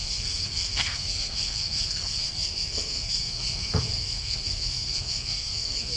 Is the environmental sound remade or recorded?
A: remade